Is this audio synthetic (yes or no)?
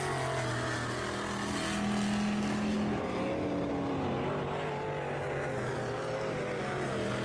no